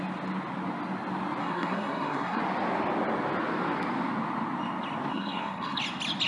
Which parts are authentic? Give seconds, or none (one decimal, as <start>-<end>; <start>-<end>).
0.0-1.4; 2.4-5.1; 5.8-6.3